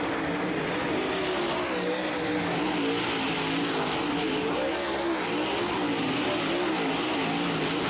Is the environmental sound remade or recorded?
recorded